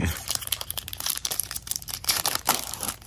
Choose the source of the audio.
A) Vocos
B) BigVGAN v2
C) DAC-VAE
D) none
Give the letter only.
B